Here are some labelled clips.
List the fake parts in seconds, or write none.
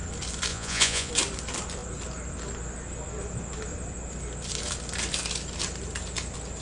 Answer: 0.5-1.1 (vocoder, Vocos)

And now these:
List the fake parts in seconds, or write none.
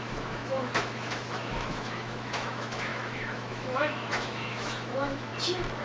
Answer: 0.0-5.3 (autoencoder, DAC-VAE)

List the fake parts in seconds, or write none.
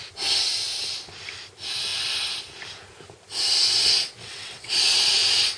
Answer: 4.2-4.7 (vocoder, WaveNeXt)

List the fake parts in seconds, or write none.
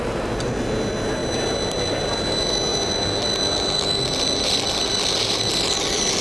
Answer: none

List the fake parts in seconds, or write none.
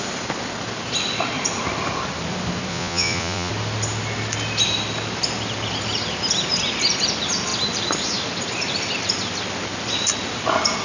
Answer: 2.7-3.5 (vocoder, Vocos)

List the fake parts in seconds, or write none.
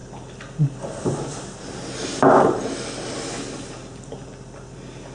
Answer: none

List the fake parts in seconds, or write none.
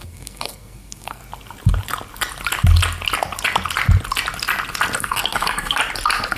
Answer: 0.0-1.2 (codec, SNAC); 5.0-5.8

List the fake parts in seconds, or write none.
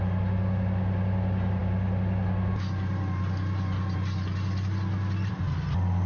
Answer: none